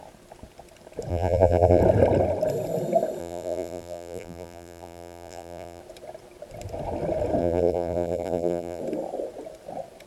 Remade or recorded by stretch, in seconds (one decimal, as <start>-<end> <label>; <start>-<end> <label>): 0.0-1.1 recorded; 1.1-1.8 remade; 1.8-3.2 recorded; 3.2-5.8 remade; 5.8-7.4 recorded; 7.4-8.8 remade; 8.8-10.1 recorded